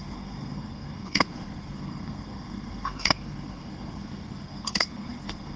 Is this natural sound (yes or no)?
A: no